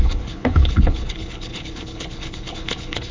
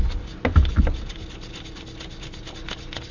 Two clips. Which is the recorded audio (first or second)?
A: second